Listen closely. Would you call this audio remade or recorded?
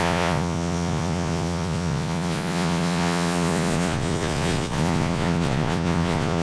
remade